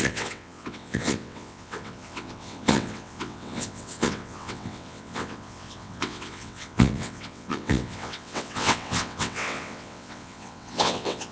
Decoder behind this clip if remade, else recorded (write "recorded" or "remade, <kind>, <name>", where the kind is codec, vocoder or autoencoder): remade, vocoder, WaveNeXt